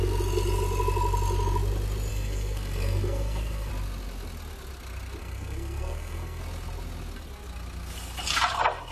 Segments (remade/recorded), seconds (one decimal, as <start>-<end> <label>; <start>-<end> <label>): 0.0-2.1 recorded; 2.1-3.7 remade; 3.7-5.2 recorded; 5.2-6.4 remade; 6.4-8.9 recorded